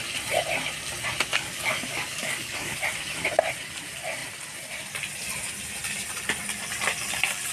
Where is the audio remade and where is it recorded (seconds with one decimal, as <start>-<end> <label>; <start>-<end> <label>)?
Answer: 0.0-1.3 recorded; 1.3-2.8 remade; 2.8-7.5 recorded